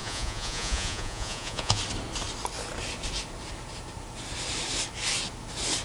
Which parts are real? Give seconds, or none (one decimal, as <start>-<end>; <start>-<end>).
1.8-5.8